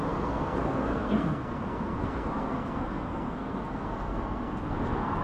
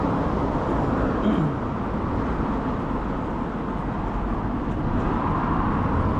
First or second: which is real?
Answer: second